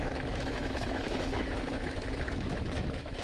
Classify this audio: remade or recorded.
remade